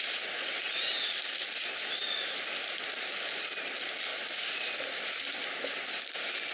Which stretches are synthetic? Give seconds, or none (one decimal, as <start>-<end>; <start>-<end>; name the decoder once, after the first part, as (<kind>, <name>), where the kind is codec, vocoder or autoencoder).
none